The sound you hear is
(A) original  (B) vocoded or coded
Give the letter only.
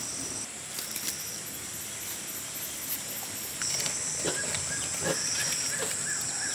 A